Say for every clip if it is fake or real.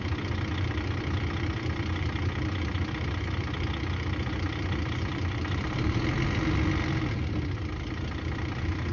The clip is real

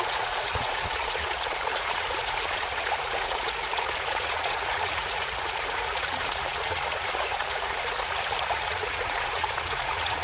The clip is fake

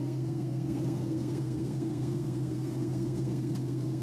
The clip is fake